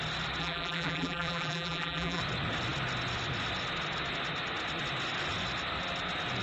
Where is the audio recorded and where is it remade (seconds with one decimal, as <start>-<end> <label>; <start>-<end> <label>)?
0.0-0.4 recorded; 0.4-2.2 remade; 2.2-6.4 recorded